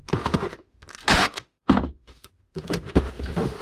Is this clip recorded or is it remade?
remade